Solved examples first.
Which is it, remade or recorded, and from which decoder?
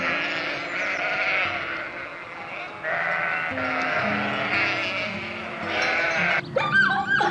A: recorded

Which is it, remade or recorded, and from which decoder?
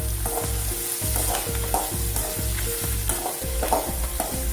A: recorded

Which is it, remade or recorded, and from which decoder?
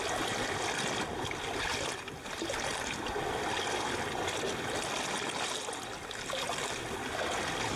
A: recorded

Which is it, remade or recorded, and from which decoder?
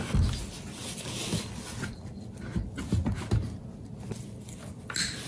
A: recorded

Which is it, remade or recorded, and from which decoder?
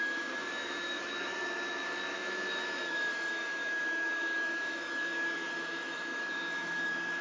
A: remade, autoencoder, DAC-VAE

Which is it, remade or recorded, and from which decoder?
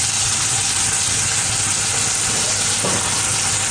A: recorded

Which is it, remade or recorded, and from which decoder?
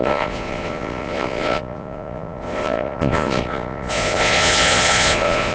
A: remade, vocoder, Vocos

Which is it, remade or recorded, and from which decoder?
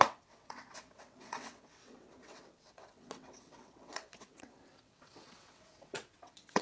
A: remade, vocoder, WaveNeXt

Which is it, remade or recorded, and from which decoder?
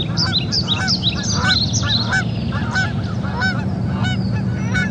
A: recorded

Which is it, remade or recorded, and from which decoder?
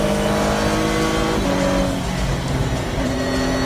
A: recorded